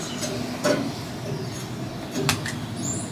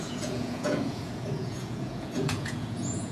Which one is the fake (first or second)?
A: second